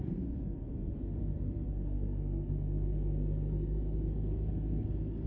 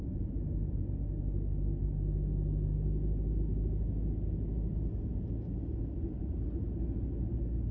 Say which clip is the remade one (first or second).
first